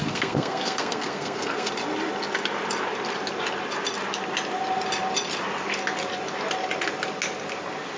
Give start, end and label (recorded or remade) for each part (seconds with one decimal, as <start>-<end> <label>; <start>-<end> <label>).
0.0-1.7 remade; 1.7-8.0 recorded